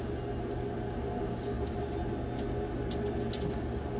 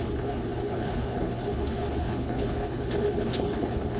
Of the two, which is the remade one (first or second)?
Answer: second